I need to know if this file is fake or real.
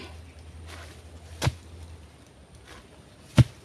real